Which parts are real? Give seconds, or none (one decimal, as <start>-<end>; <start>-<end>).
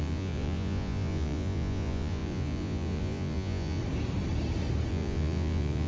3.8-4.9